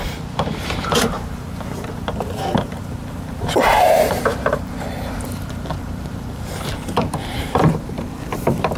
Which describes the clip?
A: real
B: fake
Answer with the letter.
B